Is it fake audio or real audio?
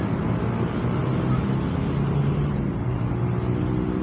real